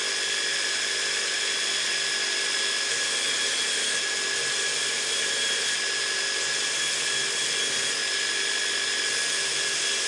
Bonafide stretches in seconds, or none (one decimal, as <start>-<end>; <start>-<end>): 0.0-10.1